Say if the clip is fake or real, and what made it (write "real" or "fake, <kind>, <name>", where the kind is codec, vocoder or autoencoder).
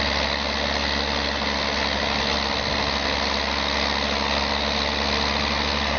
real